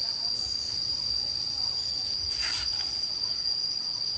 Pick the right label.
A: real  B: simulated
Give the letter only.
A